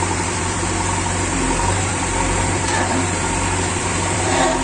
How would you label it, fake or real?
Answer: fake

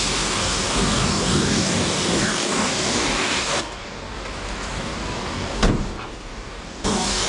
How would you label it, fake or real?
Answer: fake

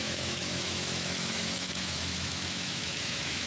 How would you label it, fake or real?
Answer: fake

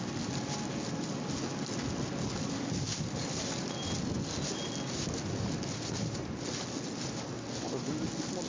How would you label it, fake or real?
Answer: real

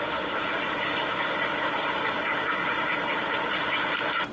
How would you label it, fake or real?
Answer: real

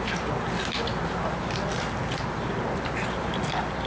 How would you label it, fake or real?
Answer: real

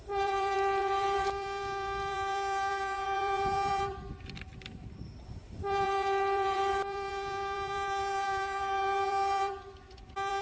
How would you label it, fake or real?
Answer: fake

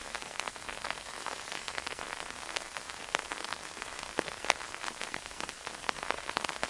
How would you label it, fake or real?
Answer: fake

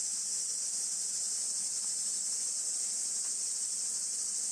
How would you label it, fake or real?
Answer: real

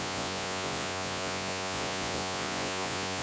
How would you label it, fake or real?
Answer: fake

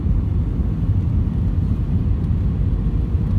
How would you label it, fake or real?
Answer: real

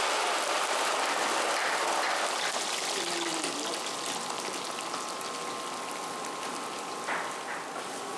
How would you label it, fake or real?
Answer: real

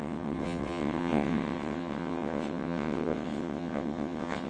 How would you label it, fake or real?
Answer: fake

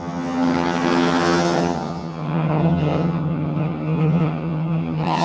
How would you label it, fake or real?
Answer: fake